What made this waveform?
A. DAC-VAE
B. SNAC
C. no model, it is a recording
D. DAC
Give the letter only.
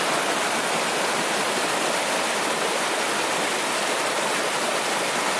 C